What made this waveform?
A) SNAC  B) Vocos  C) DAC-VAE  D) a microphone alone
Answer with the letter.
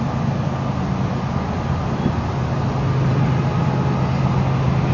D